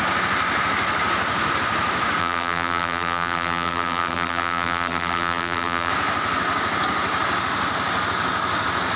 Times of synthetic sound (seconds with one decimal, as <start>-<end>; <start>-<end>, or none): 2.2-5.9